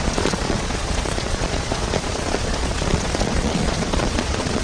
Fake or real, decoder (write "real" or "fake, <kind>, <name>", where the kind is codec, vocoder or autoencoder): fake, vocoder, Vocos